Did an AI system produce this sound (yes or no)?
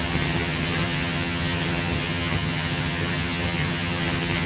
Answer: yes